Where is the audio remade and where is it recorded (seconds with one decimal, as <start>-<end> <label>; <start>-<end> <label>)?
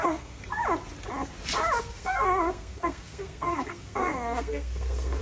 0.0-0.6 remade; 0.6-1.8 recorded; 1.8-5.2 remade